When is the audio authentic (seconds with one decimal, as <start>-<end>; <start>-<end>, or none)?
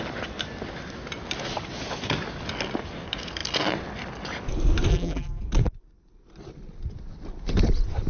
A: 0.0-4.9; 5.4-8.1